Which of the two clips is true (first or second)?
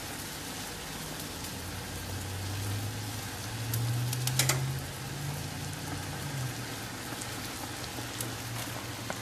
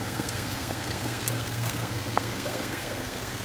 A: first